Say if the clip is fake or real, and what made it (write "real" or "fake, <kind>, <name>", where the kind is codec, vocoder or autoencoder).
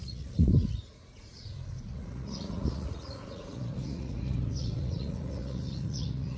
fake, vocoder, Vocos